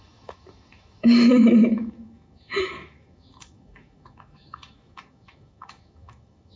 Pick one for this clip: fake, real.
fake